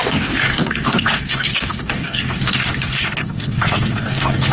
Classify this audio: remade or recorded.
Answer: remade